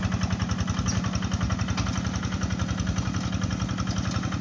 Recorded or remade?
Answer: recorded